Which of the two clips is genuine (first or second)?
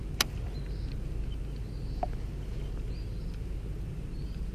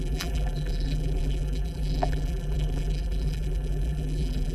first